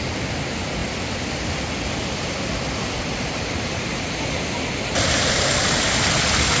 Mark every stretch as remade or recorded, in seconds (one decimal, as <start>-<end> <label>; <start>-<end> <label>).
0.0-6.6 recorded